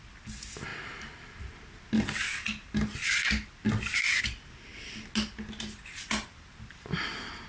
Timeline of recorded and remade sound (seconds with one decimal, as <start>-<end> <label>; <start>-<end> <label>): 0.0-7.5 recorded